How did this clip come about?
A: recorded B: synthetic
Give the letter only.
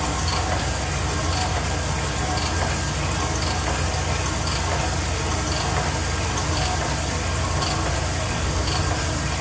A